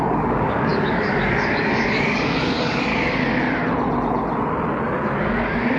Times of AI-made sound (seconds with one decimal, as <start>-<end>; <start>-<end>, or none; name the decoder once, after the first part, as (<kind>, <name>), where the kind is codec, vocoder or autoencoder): 0.0-2.9 (codec, DAC); 5.2-5.8